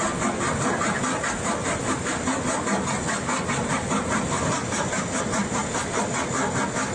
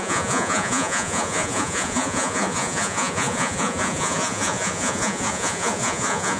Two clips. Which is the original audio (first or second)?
first